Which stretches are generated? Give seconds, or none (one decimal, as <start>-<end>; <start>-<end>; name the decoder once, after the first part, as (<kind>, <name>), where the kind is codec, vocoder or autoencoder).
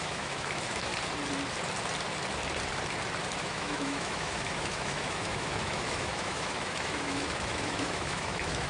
0.0-0.9 (autoencoder, DAC-VAE); 3.4-8.7